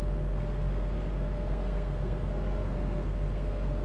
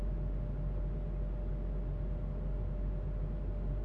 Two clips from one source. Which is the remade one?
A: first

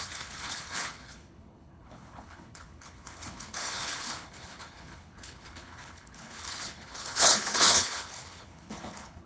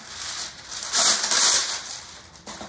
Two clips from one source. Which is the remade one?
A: first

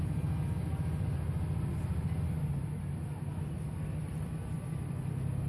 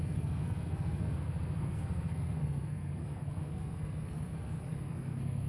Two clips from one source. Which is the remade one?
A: second